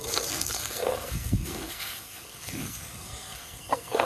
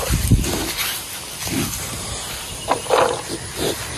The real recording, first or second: second